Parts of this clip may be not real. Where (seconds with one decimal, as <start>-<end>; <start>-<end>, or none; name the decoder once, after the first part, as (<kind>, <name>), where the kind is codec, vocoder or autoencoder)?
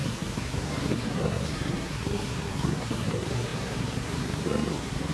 0.0-5.1 (codec, SNAC)